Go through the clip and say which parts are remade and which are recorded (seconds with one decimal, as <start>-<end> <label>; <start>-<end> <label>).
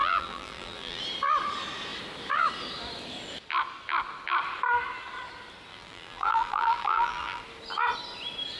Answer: 0.0-1.0 remade; 1.0-5.7 recorded; 5.7-7.4 remade; 7.4-8.6 recorded